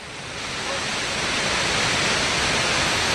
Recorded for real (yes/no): yes